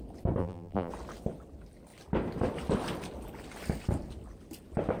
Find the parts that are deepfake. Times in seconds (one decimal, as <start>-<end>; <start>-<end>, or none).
0.4-0.9